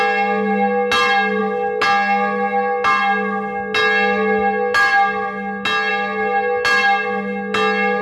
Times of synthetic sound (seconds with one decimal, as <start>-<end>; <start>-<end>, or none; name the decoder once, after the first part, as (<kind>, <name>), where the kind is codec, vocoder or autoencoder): none